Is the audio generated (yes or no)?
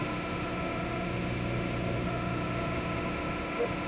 yes